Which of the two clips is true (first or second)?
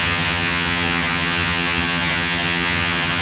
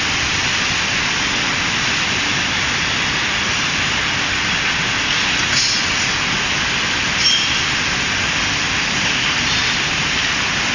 second